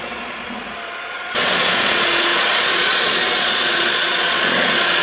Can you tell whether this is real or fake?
fake